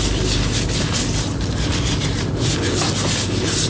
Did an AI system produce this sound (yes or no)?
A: no